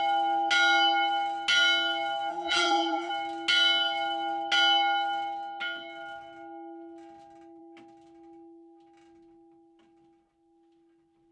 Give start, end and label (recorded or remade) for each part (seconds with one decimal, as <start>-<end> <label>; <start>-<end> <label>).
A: 0.0-2.3 recorded; 2.3-3.1 remade; 3.1-11.3 recorded